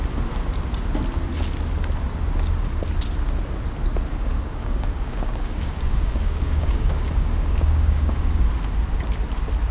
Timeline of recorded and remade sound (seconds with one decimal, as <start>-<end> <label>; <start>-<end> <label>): 0.0-4.1 recorded; 4.1-8.5 remade; 8.5-9.7 recorded